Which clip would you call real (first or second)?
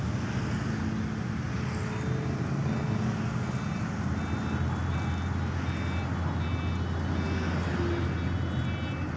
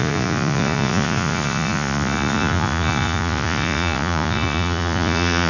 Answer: first